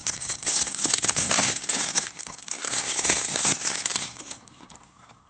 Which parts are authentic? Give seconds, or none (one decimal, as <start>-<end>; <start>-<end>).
none